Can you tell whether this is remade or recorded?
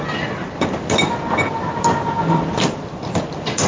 recorded